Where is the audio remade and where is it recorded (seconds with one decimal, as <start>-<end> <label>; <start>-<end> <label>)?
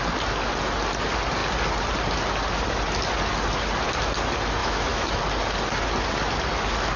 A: 0.0-4.6 recorded; 4.6-5.2 remade; 5.2-7.0 recorded